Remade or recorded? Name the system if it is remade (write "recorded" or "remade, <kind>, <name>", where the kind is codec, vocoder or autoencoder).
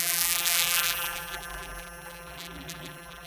remade, vocoder, BigVGAN v2